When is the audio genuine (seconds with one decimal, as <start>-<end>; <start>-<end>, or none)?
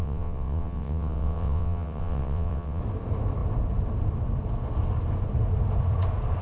2.8-6.4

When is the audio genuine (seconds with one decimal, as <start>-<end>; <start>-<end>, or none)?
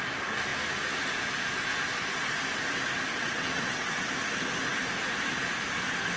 0.0-3.1; 4.1-6.2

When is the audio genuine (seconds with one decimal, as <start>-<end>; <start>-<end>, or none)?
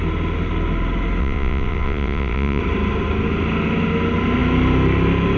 0.0-1.2; 2.6-5.4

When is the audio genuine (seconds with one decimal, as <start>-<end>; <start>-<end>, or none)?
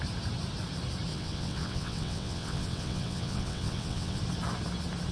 0.0-1.1; 4.2-5.1